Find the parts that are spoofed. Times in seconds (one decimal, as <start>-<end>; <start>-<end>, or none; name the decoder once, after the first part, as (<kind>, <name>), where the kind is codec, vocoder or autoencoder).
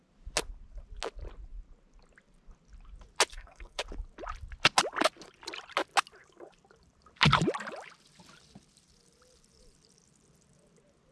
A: 3.3-3.8 (codec, SNAC)